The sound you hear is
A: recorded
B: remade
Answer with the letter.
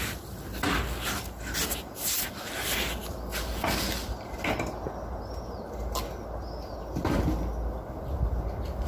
A